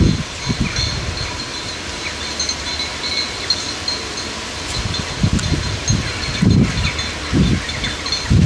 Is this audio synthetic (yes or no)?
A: no